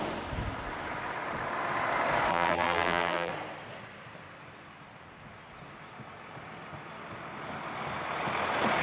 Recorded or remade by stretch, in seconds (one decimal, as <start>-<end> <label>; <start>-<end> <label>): 0.0-2.3 recorded; 2.3-3.3 remade; 3.3-8.8 recorded